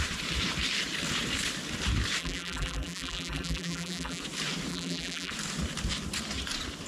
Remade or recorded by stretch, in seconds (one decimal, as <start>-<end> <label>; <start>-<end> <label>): 0.0-2.2 recorded; 2.2-4.2 remade; 4.2-4.7 recorded; 4.7-5.3 remade; 5.3-6.9 recorded